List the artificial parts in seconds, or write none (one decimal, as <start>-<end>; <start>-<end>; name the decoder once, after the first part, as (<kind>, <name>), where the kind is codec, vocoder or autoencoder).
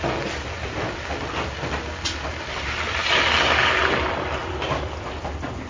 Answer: 0.0-3.0 (vocoder, BigVGAN v2); 3.6-5.7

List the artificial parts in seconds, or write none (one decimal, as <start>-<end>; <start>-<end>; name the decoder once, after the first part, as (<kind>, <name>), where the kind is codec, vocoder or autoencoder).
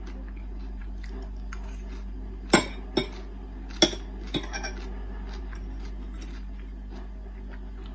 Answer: none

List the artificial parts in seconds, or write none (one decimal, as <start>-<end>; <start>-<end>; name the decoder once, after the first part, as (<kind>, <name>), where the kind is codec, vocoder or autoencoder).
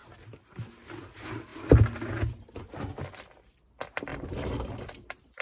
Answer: 0.0-0.9 (vocoder, BigVGAN v2); 4.1-5.4